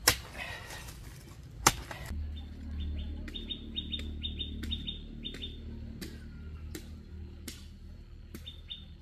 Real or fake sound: real